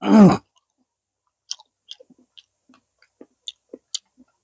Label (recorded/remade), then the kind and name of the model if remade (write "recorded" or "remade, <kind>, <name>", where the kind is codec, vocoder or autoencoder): recorded